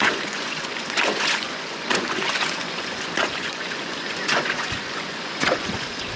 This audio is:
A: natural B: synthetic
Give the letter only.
B